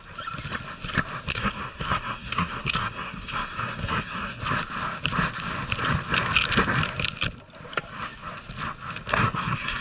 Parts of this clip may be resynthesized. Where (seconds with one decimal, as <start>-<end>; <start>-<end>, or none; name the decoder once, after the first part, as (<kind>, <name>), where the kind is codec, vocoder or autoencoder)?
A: 1.3-4.4 (codec, SNAC); 9.1-9.8